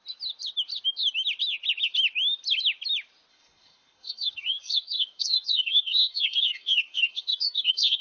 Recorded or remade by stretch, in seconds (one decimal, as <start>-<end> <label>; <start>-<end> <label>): 0.0-3.3 recorded; 3.3-8.0 remade